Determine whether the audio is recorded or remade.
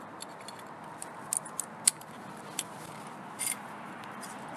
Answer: recorded